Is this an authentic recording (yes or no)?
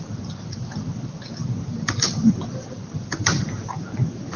yes